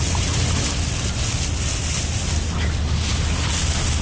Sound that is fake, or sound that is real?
real